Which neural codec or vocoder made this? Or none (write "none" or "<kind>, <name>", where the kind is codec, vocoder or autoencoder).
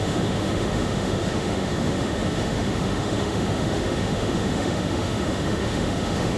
autoencoder, DAC-VAE